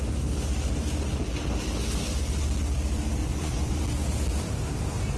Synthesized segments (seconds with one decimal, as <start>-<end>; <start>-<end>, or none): 3.2-3.8